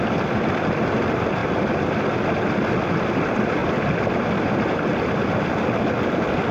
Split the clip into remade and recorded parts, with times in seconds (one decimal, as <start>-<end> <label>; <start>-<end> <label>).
0.0-3.6 recorded; 3.6-5.8 remade; 5.8-6.5 recorded